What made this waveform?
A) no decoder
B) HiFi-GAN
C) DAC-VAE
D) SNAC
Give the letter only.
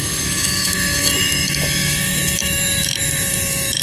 C